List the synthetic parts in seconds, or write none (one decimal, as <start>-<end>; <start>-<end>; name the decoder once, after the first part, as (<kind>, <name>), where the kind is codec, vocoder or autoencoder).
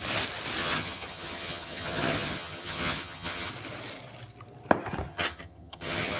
0.6-3.5 (vocoder, HiFi-GAN); 5.1-6.2